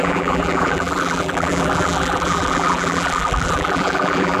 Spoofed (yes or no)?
yes